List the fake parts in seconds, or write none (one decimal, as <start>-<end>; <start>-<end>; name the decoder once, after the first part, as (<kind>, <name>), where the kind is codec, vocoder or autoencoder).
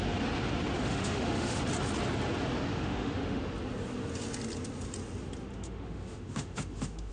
0.8-1.6 (autoencoder, DAC-VAE); 2.7-3.4; 5.5-7.1